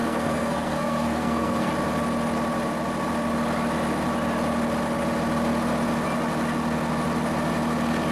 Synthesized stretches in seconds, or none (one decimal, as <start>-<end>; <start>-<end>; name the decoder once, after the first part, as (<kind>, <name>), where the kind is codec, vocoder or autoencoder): 0.0-1.7 (codec, SNAC)